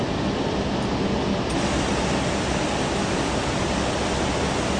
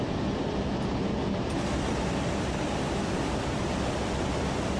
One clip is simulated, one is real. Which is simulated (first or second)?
second